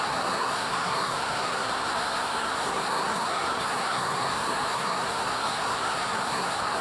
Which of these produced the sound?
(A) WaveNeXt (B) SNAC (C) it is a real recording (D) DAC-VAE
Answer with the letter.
B